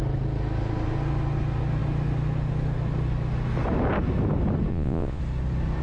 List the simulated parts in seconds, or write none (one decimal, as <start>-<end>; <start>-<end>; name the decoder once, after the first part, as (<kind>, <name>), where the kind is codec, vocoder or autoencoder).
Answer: 4.7-5.2 (vocoder, Vocos)